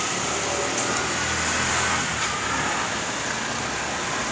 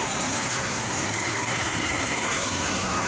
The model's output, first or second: second